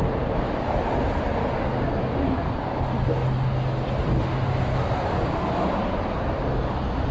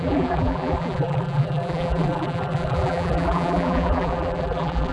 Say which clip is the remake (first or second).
second